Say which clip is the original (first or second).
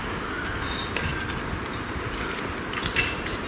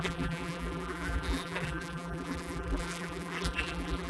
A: first